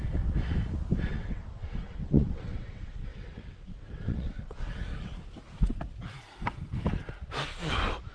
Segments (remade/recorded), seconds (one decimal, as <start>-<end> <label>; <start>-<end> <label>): 0.0-1.1 recorded; 1.1-4.7 remade; 4.7-8.1 recorded